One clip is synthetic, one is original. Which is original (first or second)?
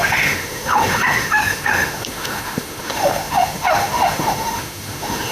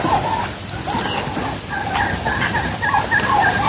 second